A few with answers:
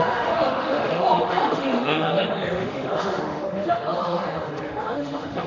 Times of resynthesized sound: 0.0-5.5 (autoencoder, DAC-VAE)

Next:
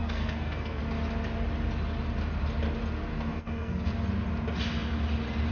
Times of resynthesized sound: 0.0-0.8 (codec, SNAC); 3.1-3.9

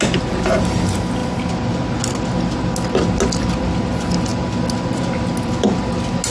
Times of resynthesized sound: none

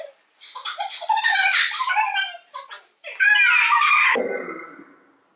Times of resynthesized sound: 0.6-3.8 (vocoder, BigVGAN v2)

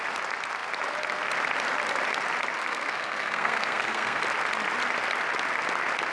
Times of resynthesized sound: 2.6-4.2 (codec, SNAC)

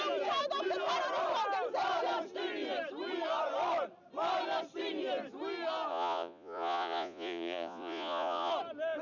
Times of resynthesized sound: 5.9-8.5 (vocoder, Vocos)